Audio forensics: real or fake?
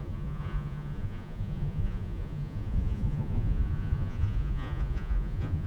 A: fake